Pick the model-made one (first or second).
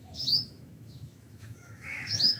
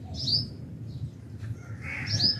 first